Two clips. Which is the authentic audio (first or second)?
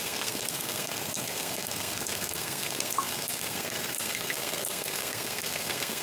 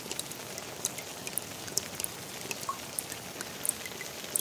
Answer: second